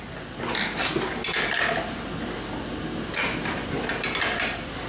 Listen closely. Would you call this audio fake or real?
real